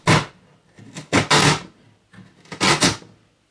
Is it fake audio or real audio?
real